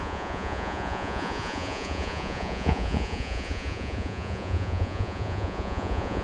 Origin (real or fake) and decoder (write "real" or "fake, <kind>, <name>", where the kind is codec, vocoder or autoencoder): fake, vocoder, Vocos